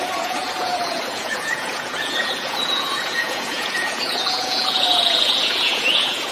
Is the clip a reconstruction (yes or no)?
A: yes